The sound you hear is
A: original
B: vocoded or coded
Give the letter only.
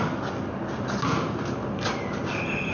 A